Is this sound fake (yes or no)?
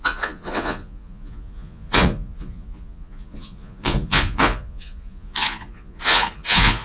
yes